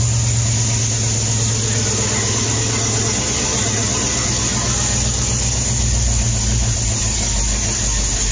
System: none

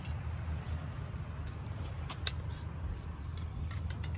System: none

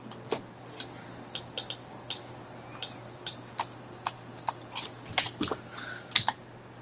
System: none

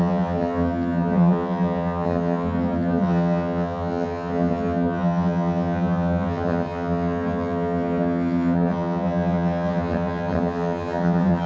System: vocoder, HiFi-GAN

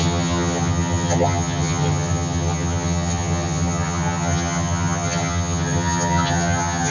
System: vocoder, HiFi-GAN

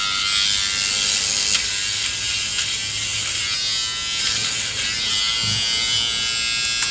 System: none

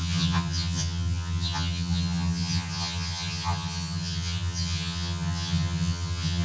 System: vocoder, HiFi-GAN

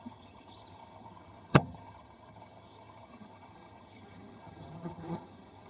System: vocoder, HiFi-GAN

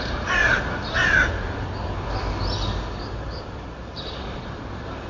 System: none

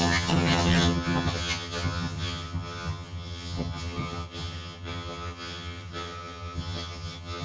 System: vocoder, HiFi-GAN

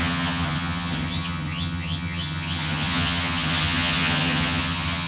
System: vocoder, HiFi-GAN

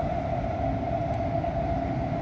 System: none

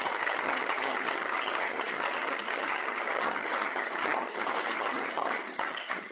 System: vocoder, HiFi-GAN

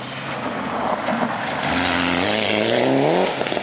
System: none